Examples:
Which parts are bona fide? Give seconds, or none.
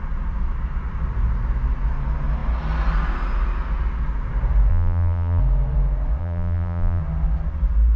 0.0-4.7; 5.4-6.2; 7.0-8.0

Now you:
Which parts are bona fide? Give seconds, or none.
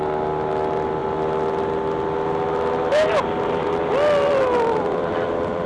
0.0-5.0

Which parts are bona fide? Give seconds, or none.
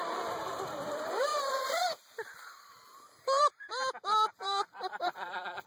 none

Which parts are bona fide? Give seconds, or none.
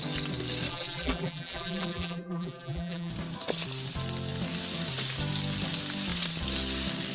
0.0-0.7; 3.1-7.1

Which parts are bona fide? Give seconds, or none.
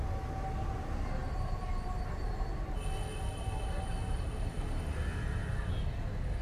0.0-6.4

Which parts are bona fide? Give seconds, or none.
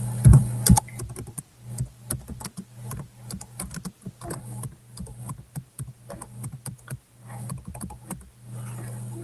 0.0-9.2